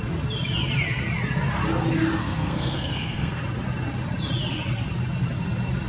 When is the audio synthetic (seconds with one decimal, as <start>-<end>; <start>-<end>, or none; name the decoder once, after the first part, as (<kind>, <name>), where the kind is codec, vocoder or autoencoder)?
2.2-3.4 (codec, SNAC)